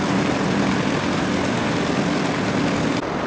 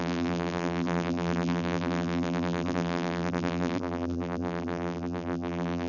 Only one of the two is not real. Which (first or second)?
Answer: second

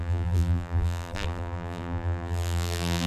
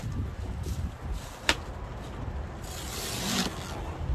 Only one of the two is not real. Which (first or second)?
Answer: first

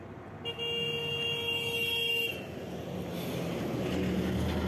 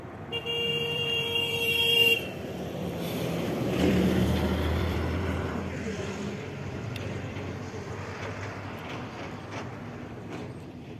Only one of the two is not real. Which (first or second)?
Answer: second